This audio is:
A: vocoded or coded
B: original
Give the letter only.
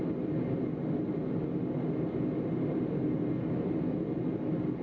B